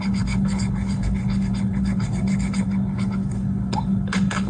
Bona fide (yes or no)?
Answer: no